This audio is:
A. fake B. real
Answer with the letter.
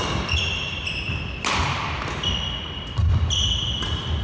B